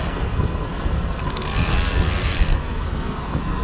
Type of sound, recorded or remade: remade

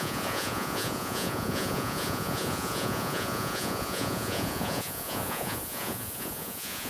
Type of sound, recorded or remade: remade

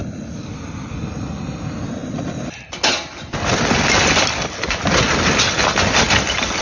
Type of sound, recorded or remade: recorded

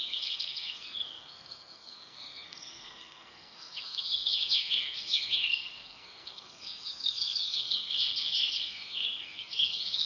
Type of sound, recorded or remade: remade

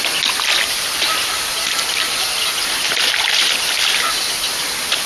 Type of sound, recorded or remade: recorded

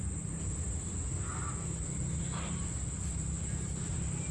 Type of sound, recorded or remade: recorded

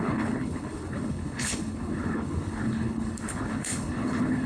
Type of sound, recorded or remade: remade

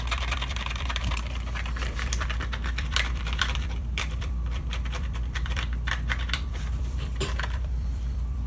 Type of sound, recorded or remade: remade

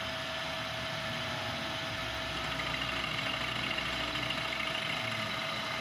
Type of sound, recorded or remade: recorded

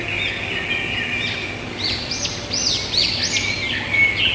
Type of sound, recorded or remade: recorded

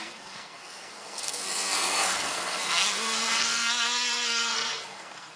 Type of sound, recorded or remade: remade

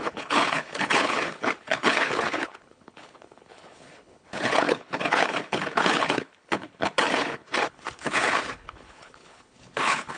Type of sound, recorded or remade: remade